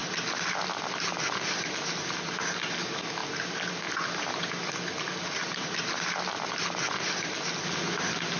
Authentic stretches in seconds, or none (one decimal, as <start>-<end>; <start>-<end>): 0.0-8.4

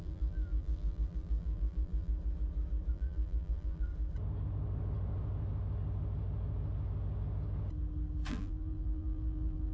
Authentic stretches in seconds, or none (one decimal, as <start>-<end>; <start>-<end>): 2.1-2.9; 3.9-8.3

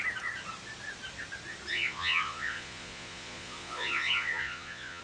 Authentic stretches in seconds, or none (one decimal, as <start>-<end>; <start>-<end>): 0.0-1.7

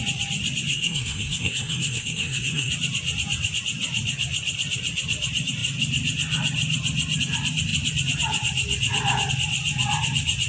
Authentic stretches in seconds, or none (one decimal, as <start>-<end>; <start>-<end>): 0.0-0.7; 2.7-10.5